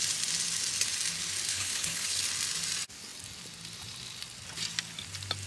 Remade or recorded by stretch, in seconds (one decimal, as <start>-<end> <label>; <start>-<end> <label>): 0.0-1.5 recorded; 1.5-2.2 remade; 2.2-5.5 recorded